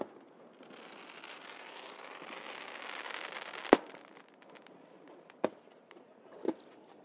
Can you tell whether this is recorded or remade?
recorded